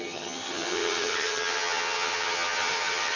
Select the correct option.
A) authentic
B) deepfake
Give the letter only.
B